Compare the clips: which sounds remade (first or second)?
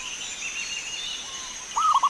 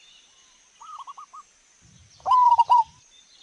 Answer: second